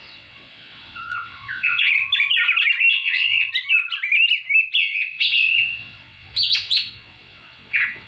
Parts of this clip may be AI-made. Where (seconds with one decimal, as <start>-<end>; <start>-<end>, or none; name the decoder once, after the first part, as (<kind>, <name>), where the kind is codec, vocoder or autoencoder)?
0.0-1.9 (vocoder, WaveNeXt); 2.9-3.5; 4.8-8.1